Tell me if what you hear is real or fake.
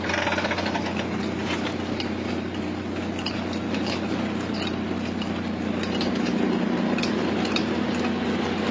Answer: real